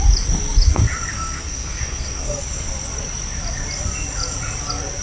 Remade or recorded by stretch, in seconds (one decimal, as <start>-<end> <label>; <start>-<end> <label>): 0.0-1.1 recorded; 1.1-2.4 remade; 2.4-5.0 recorded